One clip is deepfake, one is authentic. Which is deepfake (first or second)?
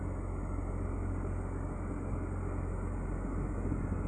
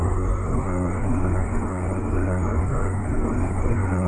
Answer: second